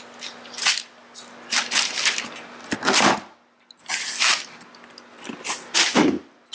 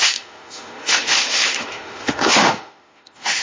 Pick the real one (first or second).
first